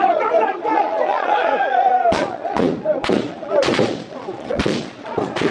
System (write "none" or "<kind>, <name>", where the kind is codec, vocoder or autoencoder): vocoder, Vocos